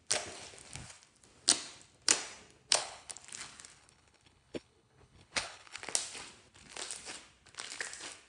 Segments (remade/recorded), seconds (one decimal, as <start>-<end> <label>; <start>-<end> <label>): 0.0-2.7 recorded; 2.7-3.2 remade; 3.2-3.8 recorded; 3.8-5.8 remade; 5.8-8.3 recorded